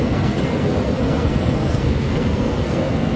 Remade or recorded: remade